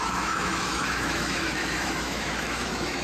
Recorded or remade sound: remade